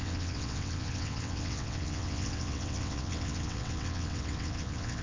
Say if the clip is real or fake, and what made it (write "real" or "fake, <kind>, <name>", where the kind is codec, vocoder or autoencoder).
fake, vocoder, WaveNeXt